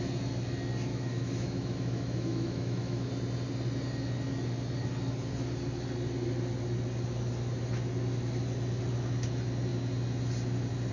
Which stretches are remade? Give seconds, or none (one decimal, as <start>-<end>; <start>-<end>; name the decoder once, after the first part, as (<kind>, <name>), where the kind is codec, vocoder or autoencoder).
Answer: 0.9-3.1 (autoencoder, DAC-VAE)